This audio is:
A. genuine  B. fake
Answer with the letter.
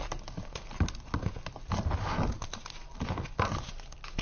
A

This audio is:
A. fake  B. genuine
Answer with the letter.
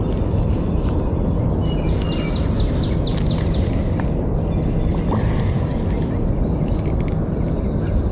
B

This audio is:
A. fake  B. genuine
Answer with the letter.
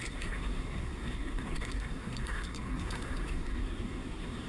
A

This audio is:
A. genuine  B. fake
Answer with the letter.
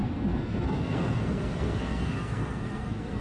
B